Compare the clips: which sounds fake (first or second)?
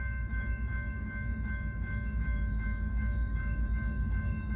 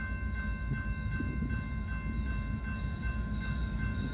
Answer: first